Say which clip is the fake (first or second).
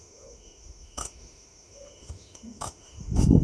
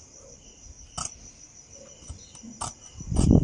first